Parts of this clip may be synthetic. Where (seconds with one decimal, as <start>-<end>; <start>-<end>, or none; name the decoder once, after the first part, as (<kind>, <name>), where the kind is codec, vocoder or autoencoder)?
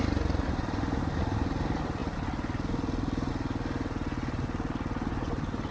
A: none